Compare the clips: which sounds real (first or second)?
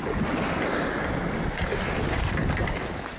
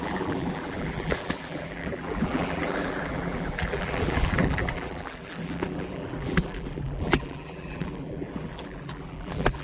first